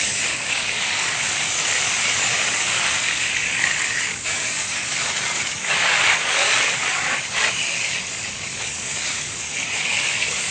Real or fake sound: fake